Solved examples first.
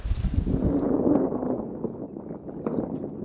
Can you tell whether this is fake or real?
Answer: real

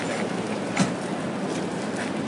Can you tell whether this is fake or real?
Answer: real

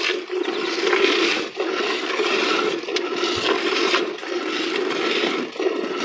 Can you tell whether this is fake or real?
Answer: fake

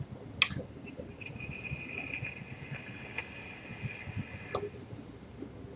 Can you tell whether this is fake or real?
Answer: real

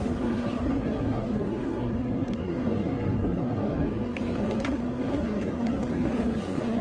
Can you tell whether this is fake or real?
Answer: fake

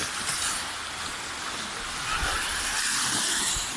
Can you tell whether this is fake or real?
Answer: real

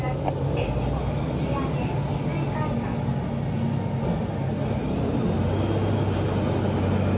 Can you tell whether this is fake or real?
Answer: real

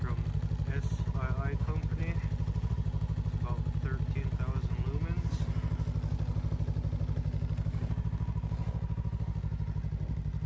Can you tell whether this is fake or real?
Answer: real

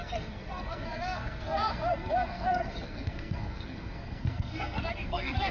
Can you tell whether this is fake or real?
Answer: fake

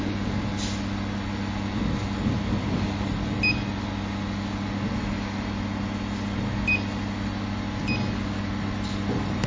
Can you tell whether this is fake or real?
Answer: real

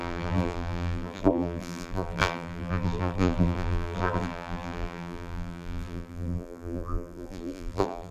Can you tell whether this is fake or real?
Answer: fake